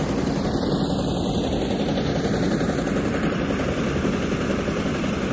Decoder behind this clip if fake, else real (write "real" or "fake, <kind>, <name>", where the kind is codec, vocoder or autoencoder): real